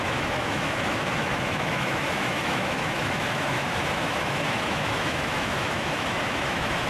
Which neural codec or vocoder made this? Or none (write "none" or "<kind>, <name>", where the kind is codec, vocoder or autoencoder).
autoencoder, DAC-VAE